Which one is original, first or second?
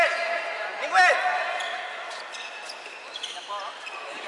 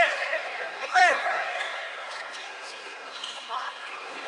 first